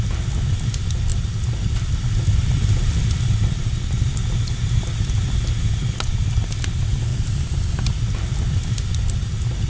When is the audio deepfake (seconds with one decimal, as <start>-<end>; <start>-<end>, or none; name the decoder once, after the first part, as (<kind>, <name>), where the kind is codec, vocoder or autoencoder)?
1.1-3.3 (vocoder, BigVGAN v2); 7.1-9.0